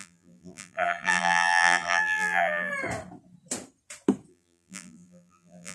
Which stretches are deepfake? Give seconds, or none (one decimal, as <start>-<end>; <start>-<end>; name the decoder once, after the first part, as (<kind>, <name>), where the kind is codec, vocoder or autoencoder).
0.0-2.7 (vocoder, BigVGAN v2); 4.3-5.7